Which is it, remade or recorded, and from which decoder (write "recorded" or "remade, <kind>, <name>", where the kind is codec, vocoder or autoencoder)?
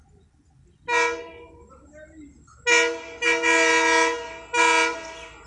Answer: recorded